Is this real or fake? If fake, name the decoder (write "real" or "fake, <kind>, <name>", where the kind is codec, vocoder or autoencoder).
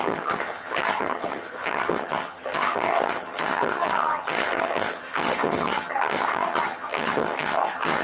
fake, vocoder, HiFi-GAN